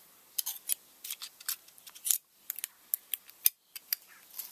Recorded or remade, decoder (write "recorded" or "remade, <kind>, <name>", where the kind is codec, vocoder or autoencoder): recorded